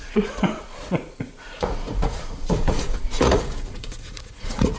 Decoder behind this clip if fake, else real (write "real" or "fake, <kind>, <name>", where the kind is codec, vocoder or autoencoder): fake, vocoder, Vocos